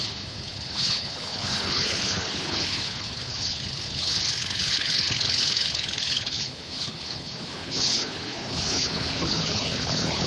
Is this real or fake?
fake